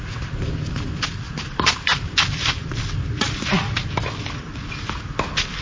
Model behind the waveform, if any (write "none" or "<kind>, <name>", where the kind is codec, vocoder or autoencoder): none